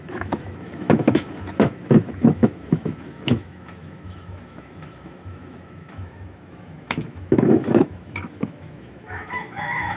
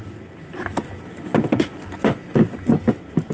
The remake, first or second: first